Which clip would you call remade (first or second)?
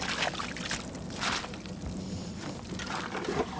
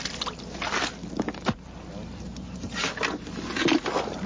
first